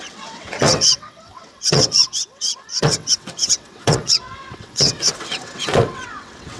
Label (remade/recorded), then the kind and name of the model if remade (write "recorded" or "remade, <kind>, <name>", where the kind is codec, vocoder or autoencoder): remade, vocoder, WaveNeXt